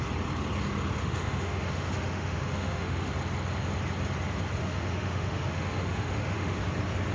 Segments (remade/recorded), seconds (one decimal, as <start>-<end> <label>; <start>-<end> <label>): 0.0-1.0 recorded; 1.0-3.1 remade; 3.1-4.6 recorded; 4.6-6.6 remade; 6.6-7.1 recorded